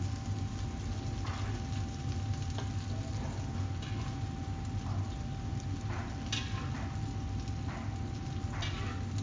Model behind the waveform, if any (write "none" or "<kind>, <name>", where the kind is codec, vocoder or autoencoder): none